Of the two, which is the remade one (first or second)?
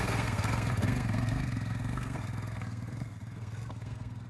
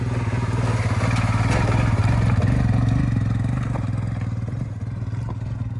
first